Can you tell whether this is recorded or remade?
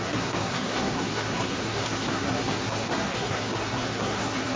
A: remade